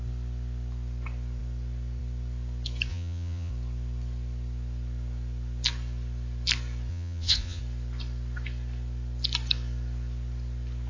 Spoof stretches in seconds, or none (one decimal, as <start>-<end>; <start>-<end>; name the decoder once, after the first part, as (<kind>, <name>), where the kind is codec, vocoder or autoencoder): 2.9-3.5 (vocoder, Vocos); 6.9-7.6